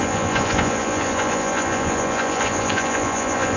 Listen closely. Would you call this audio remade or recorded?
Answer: remade